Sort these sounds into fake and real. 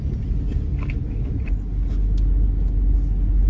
real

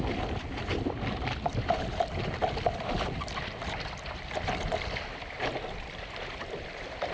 fake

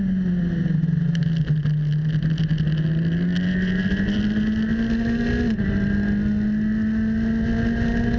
real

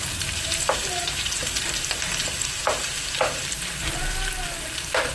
fake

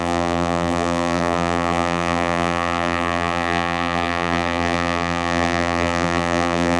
fake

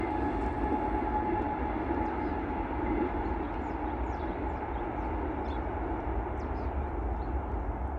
real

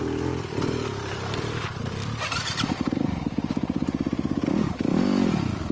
fake